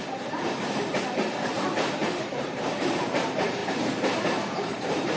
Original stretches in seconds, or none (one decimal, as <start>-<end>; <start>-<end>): none